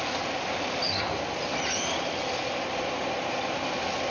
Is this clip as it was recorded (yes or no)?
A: yes